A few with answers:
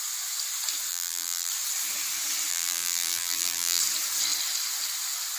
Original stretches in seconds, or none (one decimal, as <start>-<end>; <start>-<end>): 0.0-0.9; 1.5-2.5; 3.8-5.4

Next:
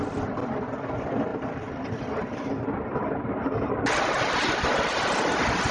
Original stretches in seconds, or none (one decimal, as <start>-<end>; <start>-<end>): 0.0-1.3; 2.0-2.9; 4.4-5.7

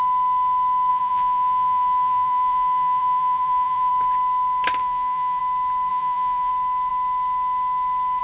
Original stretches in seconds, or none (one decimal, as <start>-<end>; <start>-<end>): 0.0-0.9; 3.9-4.8; 5.4-5.9; 6.5-8.2

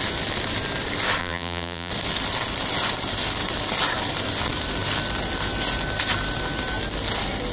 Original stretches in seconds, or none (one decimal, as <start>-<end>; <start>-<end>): 0.0-1.2; 1.9-7.5

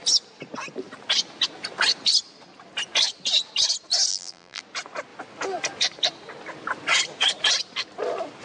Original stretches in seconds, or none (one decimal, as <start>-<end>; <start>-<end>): 0.0-4.1; 4.6-8.4